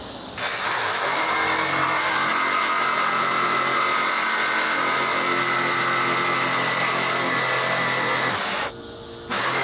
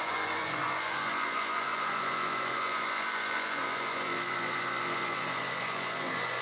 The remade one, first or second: second